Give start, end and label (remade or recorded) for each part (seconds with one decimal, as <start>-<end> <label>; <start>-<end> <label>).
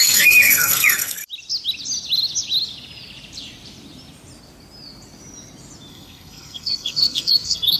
0.0-1.2 remade; 1.2-5.9 recorded; 5.9-7.8 remade